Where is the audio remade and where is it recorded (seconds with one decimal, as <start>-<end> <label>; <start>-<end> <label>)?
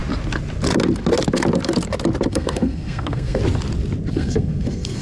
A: 0.0-2.3 recorded; 2.3-3.4 remade; 3.4-4.1 recorded; 4.1-5.0 remade